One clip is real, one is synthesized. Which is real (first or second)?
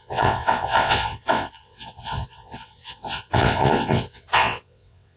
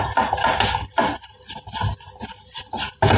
second